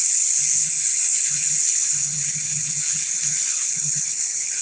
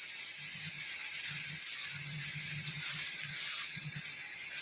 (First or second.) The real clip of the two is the second